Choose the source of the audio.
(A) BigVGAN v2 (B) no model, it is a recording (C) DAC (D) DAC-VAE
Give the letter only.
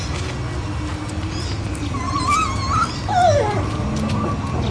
B